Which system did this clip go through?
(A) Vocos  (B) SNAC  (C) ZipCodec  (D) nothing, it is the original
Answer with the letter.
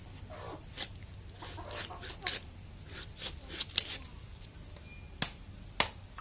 D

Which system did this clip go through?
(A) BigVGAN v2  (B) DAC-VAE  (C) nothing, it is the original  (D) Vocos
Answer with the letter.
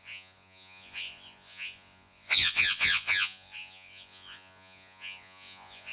D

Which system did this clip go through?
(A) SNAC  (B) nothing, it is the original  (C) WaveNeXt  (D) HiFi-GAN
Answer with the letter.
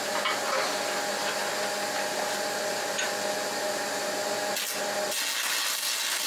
B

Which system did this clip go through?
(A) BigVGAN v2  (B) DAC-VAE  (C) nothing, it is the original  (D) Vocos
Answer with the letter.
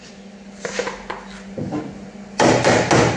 C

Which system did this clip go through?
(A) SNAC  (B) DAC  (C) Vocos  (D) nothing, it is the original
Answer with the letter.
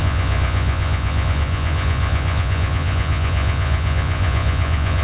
C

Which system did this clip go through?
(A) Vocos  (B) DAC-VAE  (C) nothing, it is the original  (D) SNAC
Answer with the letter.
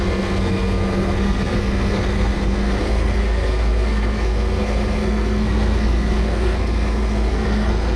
D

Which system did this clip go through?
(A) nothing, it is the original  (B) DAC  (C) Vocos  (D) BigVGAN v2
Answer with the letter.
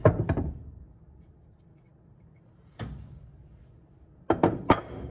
A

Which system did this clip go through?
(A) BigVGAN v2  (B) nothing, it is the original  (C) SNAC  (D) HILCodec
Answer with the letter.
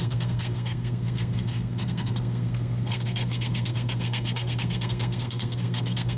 C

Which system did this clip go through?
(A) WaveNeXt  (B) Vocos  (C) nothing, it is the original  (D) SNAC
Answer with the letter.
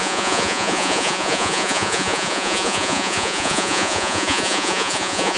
B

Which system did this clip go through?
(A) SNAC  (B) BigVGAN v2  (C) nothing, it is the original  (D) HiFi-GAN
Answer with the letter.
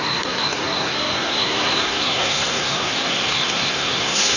A